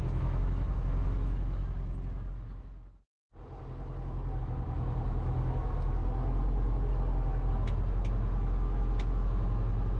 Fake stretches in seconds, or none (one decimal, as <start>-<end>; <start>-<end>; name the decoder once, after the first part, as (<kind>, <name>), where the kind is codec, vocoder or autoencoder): 0.0-1.6 (autoencoder, DAC-VAE); 2.3-3.2; 4.4-6.0; 7.5-10.0